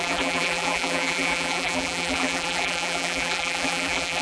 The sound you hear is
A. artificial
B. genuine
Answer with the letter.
A